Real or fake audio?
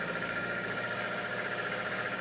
fake